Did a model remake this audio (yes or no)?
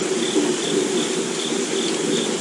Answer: no